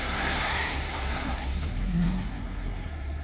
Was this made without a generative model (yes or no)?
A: no